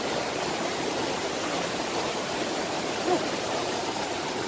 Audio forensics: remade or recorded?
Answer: remade